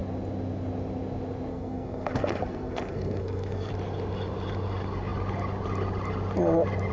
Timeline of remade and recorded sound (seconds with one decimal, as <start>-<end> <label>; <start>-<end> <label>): 0.0-1.5 recorded; 1.5-3.7 remade; 3.7-6.9 recorded